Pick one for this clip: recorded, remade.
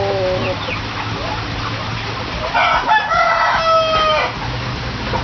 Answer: recorded